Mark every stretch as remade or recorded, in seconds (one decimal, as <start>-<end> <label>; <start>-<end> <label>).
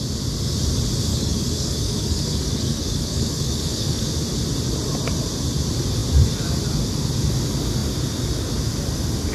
0.0-1.1 recorded; 1.1-4.0 remade; 4.0-9.3 recorded